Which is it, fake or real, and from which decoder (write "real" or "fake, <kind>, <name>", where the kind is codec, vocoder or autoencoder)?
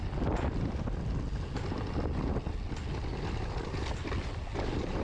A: real